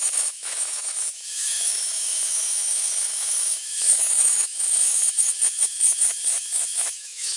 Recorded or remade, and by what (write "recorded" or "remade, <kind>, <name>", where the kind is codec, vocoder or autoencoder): remade, autoencoder, DAC-VAE